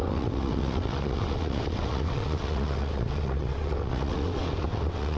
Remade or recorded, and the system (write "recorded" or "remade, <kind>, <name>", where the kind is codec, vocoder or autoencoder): remade, vocoder, WaveNeXt